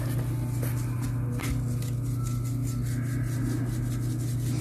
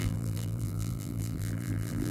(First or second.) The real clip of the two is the first